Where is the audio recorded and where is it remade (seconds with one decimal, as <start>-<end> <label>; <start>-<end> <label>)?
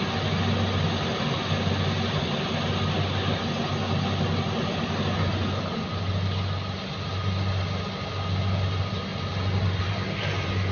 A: 0.0-10.7 recorded